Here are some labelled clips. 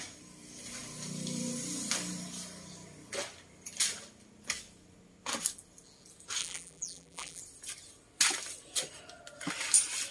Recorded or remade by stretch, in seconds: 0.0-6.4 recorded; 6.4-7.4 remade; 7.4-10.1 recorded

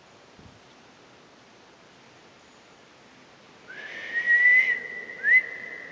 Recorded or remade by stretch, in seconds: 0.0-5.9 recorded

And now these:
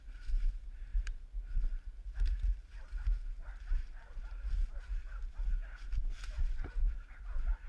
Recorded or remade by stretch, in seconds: 0.0-7.7 recorded